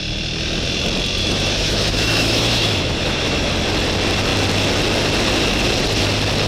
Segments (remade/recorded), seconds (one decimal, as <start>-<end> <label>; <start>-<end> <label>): 0.0-1.2 recorded; 1.2-3.5 remade; 3.5-6.5 recorded